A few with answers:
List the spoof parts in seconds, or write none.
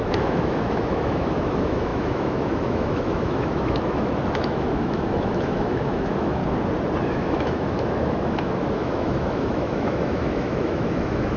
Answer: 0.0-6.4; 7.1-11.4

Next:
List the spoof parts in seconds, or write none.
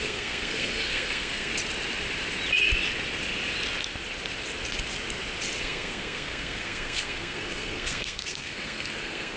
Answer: 0.0-1.5; 5.6-9.4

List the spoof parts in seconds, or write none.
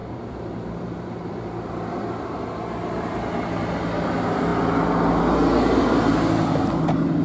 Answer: 0.0-1.3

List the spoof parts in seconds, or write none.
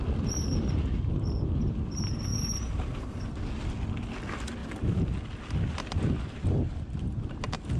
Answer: 2.3-3.2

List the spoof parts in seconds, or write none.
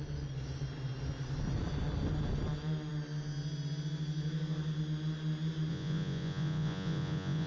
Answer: 5.7-7.5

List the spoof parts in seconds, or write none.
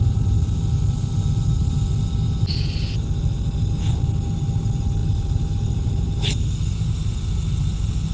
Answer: 5.0-6.4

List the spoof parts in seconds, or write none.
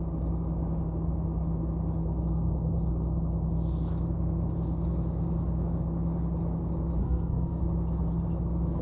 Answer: 7.0-7.6